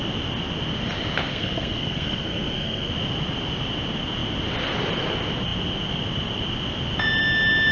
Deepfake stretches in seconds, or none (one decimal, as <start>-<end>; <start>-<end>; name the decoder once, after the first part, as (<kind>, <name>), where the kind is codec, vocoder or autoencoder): 1.3-2.9 (codec, SNAC)